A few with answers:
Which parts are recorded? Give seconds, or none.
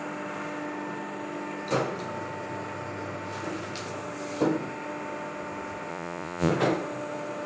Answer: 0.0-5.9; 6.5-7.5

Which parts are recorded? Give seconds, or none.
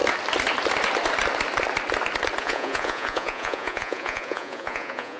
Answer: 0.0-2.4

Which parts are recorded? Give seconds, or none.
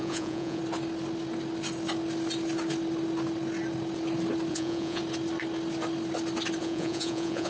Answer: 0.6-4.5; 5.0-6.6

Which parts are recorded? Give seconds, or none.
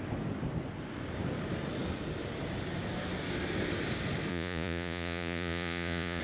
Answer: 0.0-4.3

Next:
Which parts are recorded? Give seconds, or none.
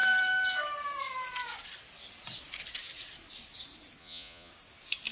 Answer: 0.0-4.0; 4.5-5.1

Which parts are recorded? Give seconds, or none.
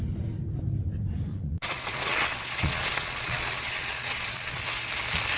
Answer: 0.0-1.3; 4.5-5.4